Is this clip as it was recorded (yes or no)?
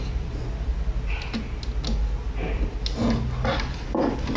yes